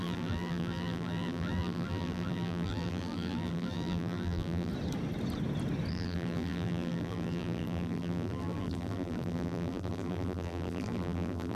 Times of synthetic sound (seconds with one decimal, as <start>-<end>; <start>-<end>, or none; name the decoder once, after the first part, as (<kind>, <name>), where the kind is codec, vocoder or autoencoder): 0.0-4.7 (vocoder, BigVGAN v2); 5.9-11.5